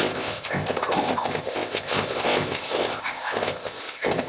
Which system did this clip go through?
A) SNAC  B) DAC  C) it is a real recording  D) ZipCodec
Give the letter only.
D